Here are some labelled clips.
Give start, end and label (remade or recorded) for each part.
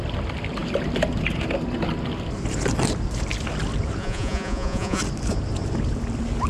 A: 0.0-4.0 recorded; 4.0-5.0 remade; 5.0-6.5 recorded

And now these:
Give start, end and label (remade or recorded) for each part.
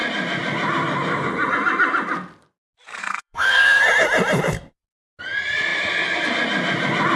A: 0.0-3.0 recorded; 3.0-3.8 remade; 3.8-7.2 recorded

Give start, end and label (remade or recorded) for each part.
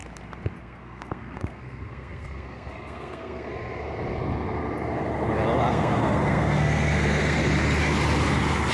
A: 0.0-0.6 recorded; 0.6-3.5 remade; 3.5-5.7 recorded; 5.7-7.4 remade; 7.4-8.7 recorded